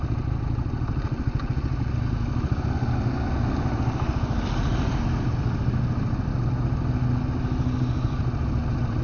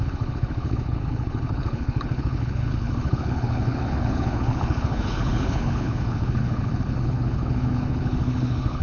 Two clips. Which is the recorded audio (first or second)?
first